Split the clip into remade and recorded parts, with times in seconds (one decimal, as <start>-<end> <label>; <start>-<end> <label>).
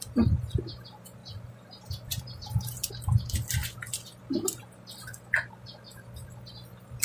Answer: 0.0-1.2 recorded; 1.2-2.9 remade; 2.9-7.0 recorded